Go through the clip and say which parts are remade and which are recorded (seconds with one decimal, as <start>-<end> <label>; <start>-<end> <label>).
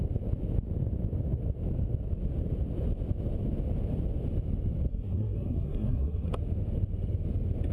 0.0-4.9 recorded; 4.9-6.3 remade; 6.3-7.7 recorded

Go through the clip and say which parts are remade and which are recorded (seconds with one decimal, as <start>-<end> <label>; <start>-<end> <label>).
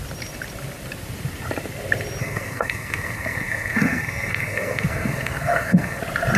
0.0-2.2 recorded; 2.2-6.0 remade; 6.0-6.4 recorded